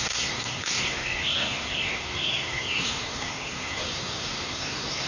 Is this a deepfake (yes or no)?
yes